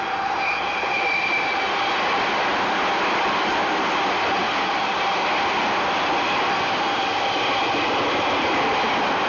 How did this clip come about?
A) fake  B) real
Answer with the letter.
B